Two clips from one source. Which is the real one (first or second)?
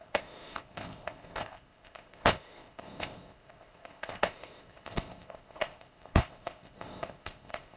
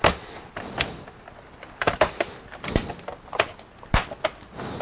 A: second